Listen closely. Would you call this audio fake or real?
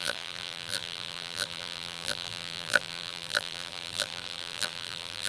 fake